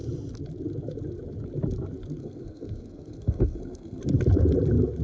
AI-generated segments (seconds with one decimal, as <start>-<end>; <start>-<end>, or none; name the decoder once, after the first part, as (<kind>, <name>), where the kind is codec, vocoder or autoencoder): 2.2-4.0 (codec, SNAC)